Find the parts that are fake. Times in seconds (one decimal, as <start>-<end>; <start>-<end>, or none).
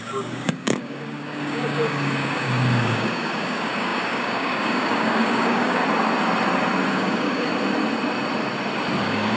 0.0-5.8; 6.9-7.5; 9.0-9.4